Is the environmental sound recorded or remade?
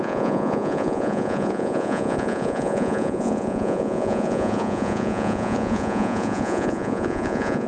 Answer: remade